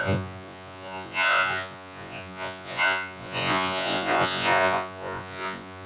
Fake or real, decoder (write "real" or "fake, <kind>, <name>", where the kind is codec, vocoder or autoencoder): fake, vocoder, Vocos